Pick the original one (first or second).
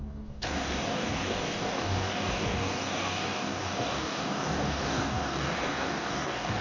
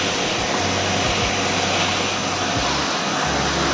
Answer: second